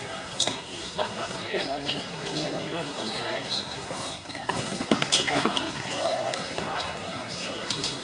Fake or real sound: fake